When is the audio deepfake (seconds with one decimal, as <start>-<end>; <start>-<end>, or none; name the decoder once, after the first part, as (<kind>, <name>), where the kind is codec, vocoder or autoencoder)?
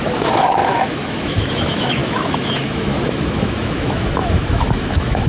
0.0-5.3 (autoencoder, DAC-VAE)